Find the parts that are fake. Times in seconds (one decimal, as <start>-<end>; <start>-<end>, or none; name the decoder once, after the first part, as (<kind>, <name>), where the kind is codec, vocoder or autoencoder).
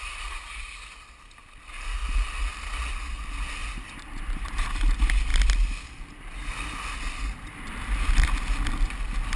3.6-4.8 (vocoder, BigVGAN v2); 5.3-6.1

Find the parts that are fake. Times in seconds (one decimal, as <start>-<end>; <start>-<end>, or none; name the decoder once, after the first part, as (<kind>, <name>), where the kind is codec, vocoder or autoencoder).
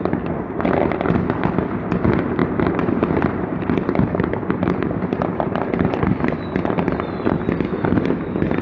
2.4-6.4 (vocoder, BigVGAN v2)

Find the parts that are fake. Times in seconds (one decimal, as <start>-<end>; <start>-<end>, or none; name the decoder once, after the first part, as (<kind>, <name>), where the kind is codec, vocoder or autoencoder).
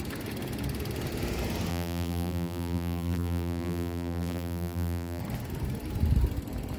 1.7-5.2 (vocoder, BigVGAN v2)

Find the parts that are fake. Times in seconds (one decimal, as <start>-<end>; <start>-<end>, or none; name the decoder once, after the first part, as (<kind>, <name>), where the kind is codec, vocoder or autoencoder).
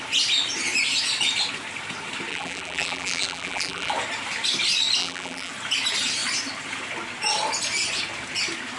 2.3-3.9 (vocoder, BigVGAN v2); 5.0-5.5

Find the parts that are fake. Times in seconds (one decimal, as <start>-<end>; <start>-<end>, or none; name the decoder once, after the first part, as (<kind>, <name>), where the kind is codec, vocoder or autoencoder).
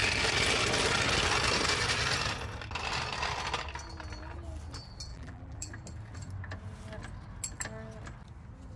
5.1-5.7 (vocoder, BigVGAN v2)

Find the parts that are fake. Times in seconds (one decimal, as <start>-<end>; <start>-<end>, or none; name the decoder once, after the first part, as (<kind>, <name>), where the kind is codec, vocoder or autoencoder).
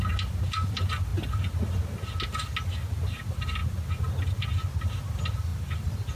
none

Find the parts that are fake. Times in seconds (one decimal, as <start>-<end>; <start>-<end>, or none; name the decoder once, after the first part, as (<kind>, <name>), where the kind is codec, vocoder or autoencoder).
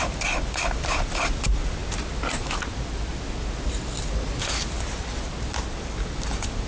0.0-1.8 (vocoder, BigVGAN v2); 5.5-6.7